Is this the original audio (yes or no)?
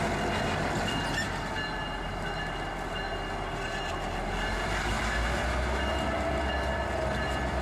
yes